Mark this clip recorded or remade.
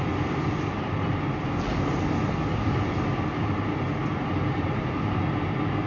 recorded